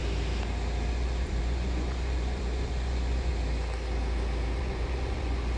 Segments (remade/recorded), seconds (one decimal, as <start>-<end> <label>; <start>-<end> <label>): 0.0-0.9 recorded; 0.9-3.3 remade; 3.3-4.6 recorded; 4.6-5.6 remade